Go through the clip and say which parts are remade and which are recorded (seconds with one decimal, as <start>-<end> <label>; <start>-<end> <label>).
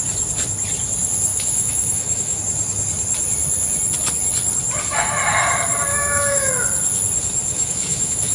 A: 0.0-1.3 recorded; 1.3-2.4 remade; 2.4-5.9 recorded; 5.9-6.5 remade; 6.5-7.5 recorded; 7.5-8.3 remade